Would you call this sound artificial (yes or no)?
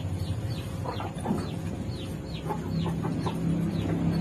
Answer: no